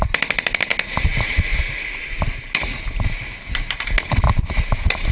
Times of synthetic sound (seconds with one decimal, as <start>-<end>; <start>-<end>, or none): none